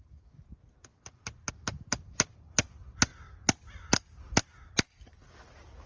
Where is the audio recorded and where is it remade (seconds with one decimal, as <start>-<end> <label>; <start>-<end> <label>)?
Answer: 0.0-5.9 recorded